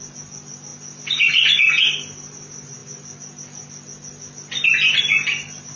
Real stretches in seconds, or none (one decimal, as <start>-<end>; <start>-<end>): 0.0-5.8